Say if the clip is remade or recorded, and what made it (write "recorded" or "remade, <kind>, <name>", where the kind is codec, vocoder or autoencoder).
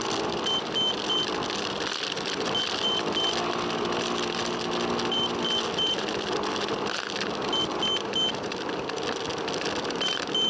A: recorded